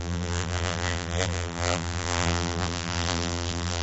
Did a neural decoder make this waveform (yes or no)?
yes